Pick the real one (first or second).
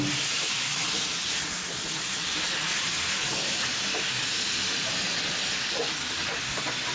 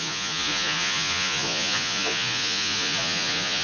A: first